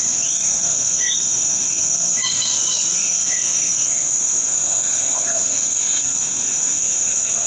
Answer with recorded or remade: remade